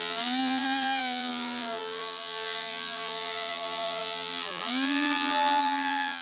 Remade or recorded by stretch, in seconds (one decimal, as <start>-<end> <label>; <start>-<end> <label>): 0.0-6.2 remade